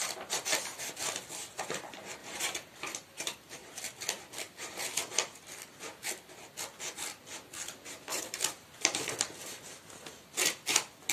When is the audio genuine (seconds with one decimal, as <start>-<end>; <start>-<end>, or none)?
0.0-2.2; 3.7-8.1; 9.2-11.1